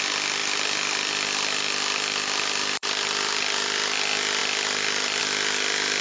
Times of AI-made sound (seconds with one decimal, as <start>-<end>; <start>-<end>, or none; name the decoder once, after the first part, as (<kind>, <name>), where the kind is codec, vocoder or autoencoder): 0.4-4.0 (vocoder, BigVGAN v2); 4.4-5.2